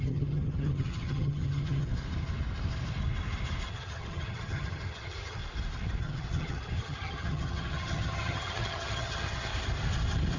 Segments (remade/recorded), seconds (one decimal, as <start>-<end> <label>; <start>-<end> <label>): 0.0-1.9 remade; 1.9-3.7 recorded; 3.7-5.4 remade; 5.4-6.0 recorded; 6.0-9.5 remade; 9.5-10.4 recorded